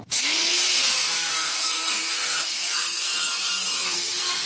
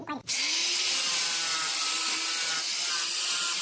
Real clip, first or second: second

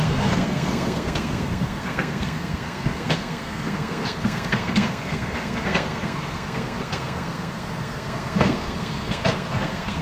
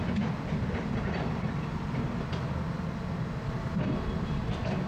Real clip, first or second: second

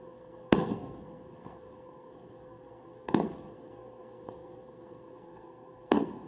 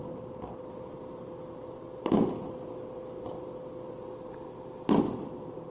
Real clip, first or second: second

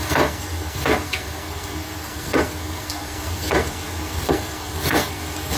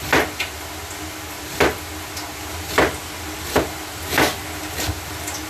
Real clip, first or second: second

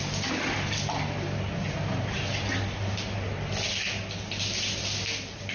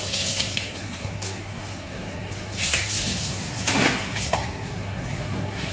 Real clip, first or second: first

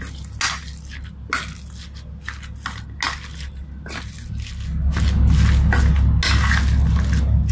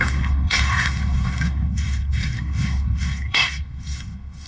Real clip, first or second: first